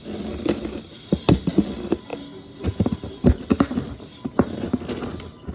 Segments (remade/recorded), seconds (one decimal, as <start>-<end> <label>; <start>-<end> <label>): 0.0-5.5 recorded